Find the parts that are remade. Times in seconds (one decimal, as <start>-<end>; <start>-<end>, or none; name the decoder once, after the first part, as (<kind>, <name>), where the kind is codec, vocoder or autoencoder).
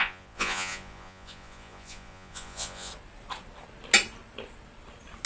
0.0-2.9 (vocoder, Vocos)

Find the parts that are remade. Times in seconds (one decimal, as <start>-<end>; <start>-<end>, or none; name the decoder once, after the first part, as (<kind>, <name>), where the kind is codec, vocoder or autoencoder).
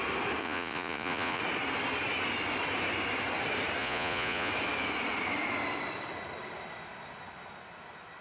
0.4-1.4 (vocoder, Vocos); 3.8-4.5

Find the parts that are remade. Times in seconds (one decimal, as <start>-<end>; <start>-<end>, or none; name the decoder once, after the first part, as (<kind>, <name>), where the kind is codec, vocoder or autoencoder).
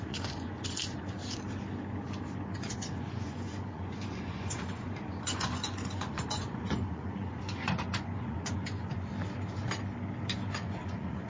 0.0-1.2 (vocoder, Vocos); 2.5-9.1; 10.5-11.3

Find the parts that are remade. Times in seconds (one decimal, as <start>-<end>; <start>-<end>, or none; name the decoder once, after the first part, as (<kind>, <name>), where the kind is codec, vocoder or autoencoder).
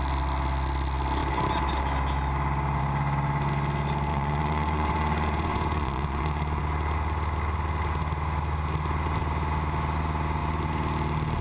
4.1-6.6 (vocoder, Vocos)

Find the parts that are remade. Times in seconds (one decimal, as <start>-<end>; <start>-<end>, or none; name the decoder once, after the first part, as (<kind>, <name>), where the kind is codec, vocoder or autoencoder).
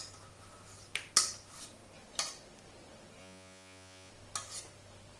3.2-4.1 (vocoder, Vocos)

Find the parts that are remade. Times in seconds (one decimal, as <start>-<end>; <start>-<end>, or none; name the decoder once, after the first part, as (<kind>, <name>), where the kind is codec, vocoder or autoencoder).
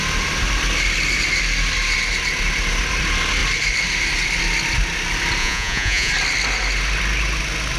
5.4-6.1 (vocoder, Vocos)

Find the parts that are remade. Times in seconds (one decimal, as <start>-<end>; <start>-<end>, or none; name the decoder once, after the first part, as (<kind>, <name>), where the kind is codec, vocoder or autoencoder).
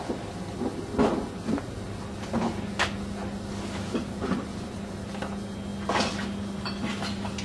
none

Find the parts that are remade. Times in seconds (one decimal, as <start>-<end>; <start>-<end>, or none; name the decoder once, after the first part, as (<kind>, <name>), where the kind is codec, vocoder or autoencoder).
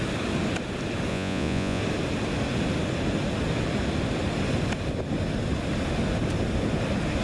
1.1-1.8 (vocoder, Vocos)